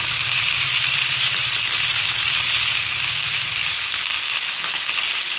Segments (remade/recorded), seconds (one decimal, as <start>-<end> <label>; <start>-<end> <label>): 0.0-2.7 remade; 2.7-5.4 recorded